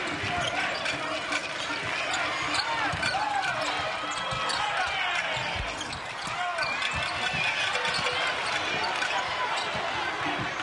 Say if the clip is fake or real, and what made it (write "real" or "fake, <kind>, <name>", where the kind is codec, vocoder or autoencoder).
real